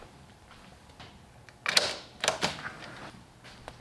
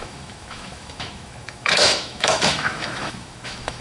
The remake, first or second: second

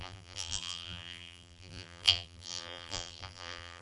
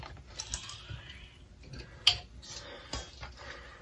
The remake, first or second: first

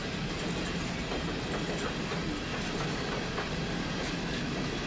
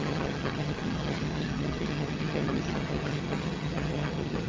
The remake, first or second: second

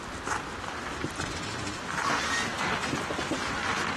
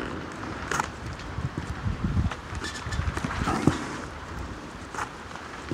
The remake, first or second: second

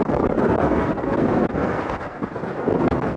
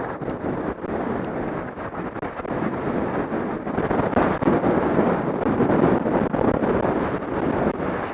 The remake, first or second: first